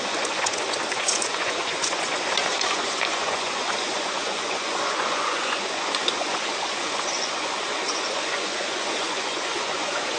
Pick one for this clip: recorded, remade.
remade